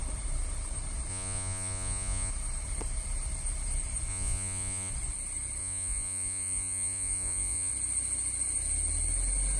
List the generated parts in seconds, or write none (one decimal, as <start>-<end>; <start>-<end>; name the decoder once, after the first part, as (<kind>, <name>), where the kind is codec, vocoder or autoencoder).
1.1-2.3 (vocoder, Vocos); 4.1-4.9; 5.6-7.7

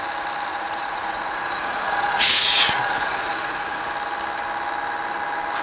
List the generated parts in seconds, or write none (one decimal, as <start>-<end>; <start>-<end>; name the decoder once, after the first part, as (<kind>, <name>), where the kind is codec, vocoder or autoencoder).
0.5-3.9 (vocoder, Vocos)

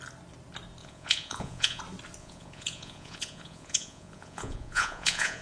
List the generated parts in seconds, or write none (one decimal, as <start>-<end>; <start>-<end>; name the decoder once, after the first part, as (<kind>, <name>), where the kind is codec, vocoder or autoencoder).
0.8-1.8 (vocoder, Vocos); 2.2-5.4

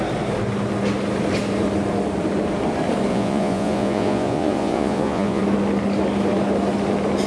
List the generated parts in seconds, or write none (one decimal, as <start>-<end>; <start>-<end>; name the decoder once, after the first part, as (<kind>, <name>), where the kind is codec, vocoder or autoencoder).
3.1-5.4 (vocoder, Vocos)

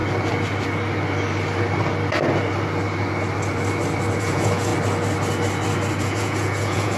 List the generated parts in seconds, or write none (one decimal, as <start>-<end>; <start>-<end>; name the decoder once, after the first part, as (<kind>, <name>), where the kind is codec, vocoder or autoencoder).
4.2-4.7 (vocoder, Vocos); 6.0-7.0

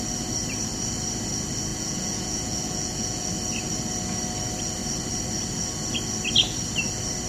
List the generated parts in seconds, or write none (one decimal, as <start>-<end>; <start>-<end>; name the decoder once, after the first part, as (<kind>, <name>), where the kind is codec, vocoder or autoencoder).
1.7-3.3 (vocoder, Vocos)

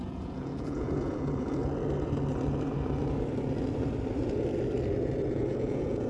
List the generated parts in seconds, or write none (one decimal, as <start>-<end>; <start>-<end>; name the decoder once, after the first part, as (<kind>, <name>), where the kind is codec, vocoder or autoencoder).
0.0-1.6 (vocoder, Vocos); 5.3-6.1

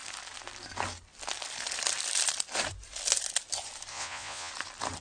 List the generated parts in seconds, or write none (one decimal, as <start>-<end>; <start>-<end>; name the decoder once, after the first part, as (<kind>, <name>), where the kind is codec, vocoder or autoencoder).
3.9-4.5 (vocoder, Vocos)